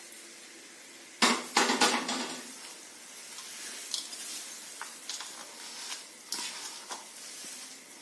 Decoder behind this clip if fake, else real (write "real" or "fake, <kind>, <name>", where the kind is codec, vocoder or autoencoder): real